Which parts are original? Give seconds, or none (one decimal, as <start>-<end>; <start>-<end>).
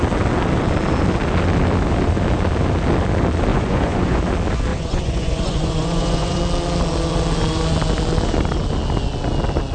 0.0-3.5; 4.2-4.7; 6.4-9.7